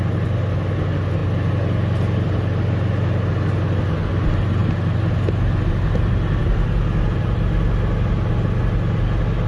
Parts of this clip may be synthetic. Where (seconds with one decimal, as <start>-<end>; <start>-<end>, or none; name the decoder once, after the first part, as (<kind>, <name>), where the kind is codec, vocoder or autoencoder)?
none